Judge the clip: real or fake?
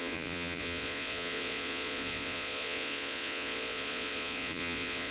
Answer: fake